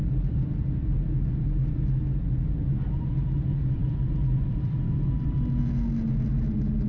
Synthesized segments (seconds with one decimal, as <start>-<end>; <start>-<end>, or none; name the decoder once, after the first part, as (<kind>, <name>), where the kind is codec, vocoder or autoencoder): 0.0-2.3 (vocoder, BigVGAN v2); 3.8-5.6